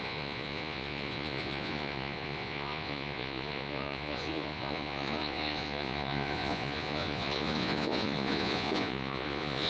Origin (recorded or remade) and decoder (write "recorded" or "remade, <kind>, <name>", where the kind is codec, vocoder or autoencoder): remade, vocoder, Vocos